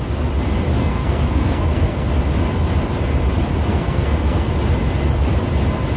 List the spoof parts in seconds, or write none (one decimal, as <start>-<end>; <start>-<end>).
0.8-2.1; 3.7-4.5